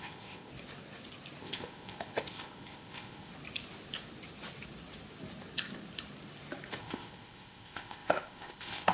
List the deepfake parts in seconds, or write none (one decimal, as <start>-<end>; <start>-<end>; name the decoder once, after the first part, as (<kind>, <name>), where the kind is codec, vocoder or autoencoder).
0.0-0.5 (codec, ZipCodec); 1.4-3.3; 6.8-8.9